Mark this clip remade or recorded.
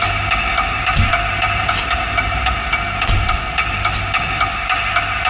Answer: recorded